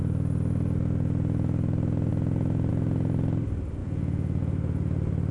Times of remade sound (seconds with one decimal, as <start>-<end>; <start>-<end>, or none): 3.8-4.4